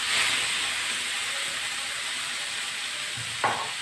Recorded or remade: recorded